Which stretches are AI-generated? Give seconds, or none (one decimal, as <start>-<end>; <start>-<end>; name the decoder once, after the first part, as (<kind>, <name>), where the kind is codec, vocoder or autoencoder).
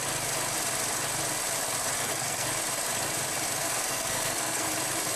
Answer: 2.0-2.5 (codec, SNAC); 3.6-4.7